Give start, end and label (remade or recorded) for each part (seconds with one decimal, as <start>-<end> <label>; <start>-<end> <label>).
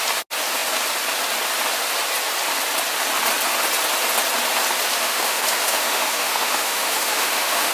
0.0-5.0 recorded; 5.0-7.7 remade